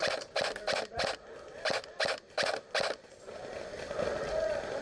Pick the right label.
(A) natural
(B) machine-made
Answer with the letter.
A